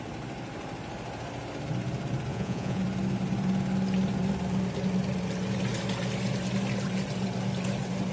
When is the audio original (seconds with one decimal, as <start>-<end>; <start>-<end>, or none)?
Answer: 0.0-2.3; 2.8-8.1